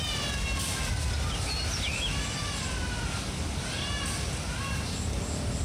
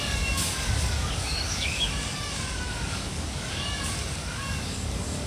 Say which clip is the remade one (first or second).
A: second